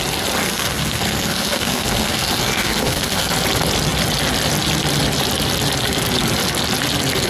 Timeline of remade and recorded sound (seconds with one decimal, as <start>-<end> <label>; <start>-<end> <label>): 0.0-0.4 recorded; 0.4-3.3 remade; 3.3-7.3 recorded